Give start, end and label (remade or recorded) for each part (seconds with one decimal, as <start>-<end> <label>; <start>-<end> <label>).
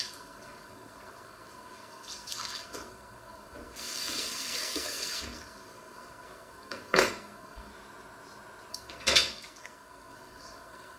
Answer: 0.0-7.7 remade; 7.7-8.7 recorded; 8.7-11.0 remade